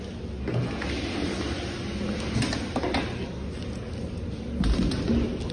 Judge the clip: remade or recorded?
recorded